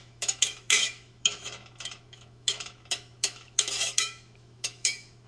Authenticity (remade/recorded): remade